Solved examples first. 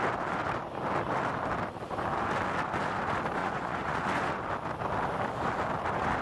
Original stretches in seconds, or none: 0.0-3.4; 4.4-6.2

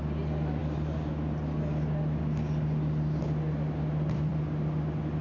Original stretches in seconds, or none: 0.0-5.2

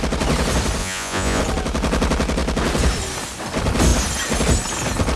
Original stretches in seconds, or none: 0.0-0.8; 1.4-5.2

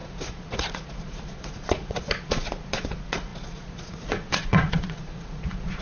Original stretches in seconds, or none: none